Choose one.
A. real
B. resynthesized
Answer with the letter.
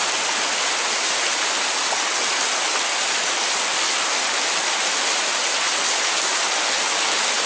A